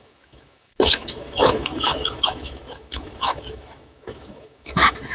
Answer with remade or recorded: remade